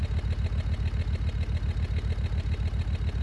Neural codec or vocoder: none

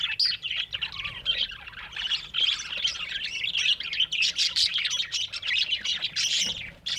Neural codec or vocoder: none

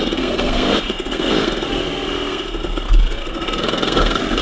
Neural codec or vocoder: codec, SNAC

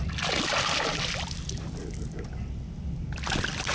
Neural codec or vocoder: none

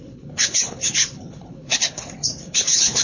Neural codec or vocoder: codec, HILCodec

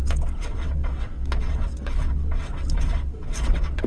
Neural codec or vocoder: vocoder, WaveNeXt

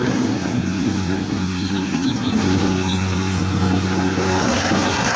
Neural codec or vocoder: codec, SNAC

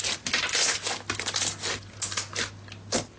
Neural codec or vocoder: none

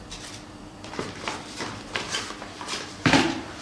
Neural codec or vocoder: vocoder, BigVGAN v2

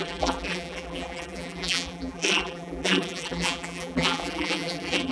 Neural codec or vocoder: vocoder, BigVGAN v2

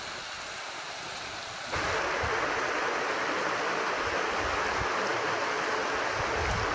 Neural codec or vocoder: none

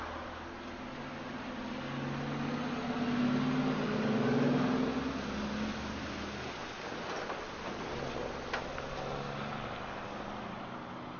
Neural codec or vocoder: none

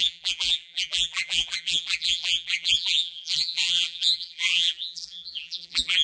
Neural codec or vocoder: vocoder, BigVGAN v2